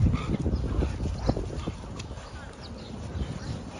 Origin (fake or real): real